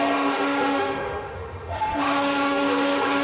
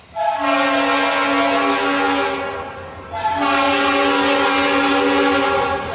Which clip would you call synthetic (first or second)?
first